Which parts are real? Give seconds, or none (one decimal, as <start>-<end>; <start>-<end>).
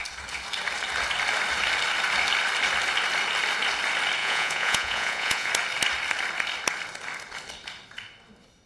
0.0-4.2; 5.5-8.7